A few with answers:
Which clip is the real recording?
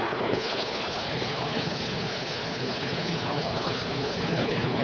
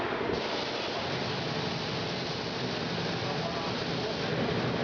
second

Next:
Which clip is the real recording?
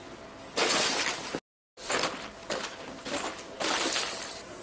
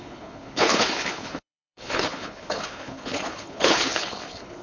first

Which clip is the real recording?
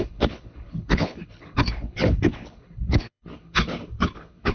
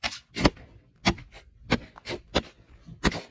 second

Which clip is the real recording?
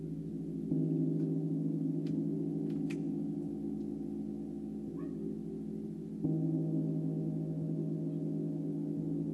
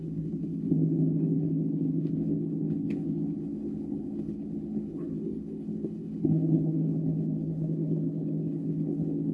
first